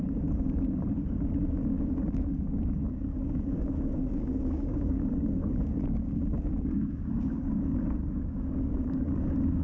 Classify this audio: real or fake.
fake